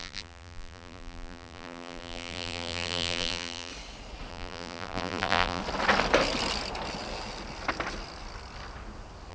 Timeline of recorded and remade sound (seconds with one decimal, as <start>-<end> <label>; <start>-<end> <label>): 0.0-3.7 remade; 3.7-4.3 recorded; 4.3-5.6 remade; 5.6-9.3 recorded